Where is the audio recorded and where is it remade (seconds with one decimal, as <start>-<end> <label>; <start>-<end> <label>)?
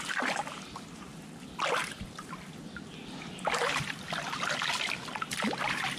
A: 0.0-6.0 recorded